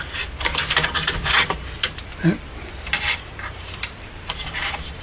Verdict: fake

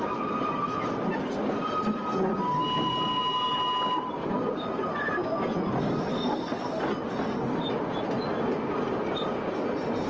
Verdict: real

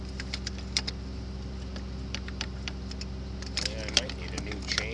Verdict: fake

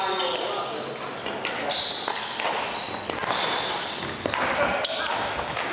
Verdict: real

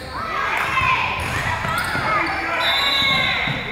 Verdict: real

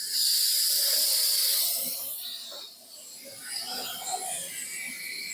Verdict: real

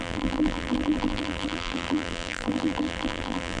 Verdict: fake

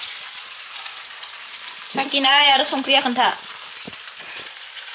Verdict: fake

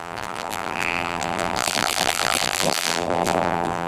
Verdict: fake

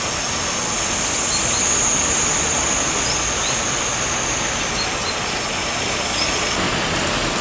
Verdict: real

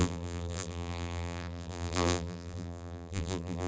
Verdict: fake